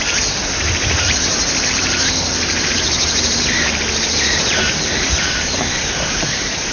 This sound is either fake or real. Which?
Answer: fake